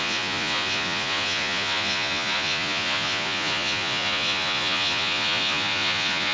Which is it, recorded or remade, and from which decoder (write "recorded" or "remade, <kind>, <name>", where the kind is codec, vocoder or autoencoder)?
remade, vocoder, Vocos